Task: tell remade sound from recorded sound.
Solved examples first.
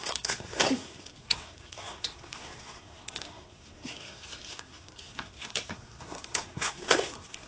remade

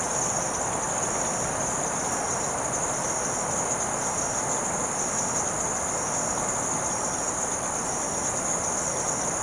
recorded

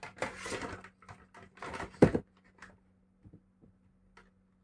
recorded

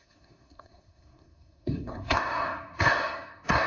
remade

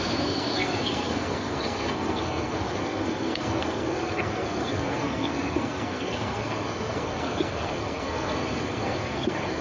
remade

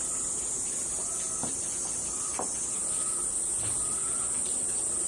recorded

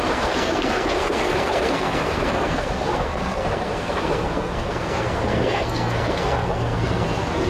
remade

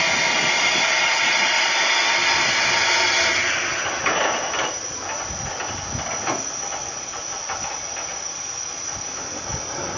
recorded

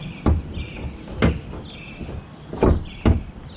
recorded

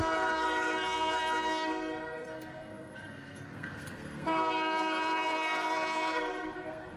remade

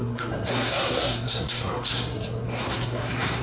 remade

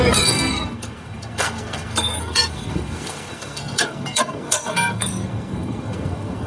remade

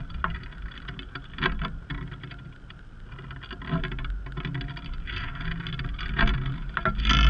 recorded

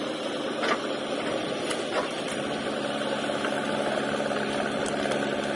recorded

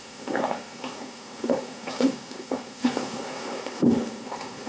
remade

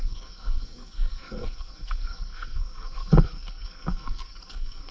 remade